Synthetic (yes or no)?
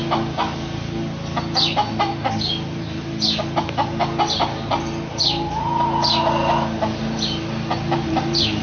no